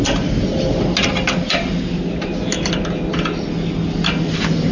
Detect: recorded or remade recorded